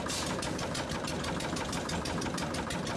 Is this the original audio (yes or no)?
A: yes